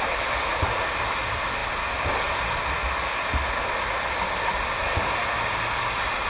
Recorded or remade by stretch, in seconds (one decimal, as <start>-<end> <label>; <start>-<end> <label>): 0.0-6.3 recorded